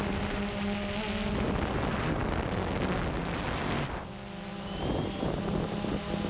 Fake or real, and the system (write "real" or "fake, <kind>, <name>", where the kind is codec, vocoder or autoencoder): real